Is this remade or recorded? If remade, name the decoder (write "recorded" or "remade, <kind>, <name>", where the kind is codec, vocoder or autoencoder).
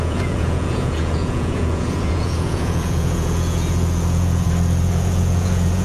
remade, vocoder, Vocos